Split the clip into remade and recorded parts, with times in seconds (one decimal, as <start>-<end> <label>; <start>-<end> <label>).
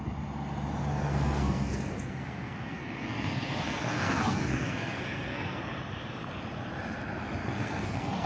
0.0-0.8 recorded; 0.8-5.6 remade; 5.6-7.4 recorded; 7.4-8.3 remade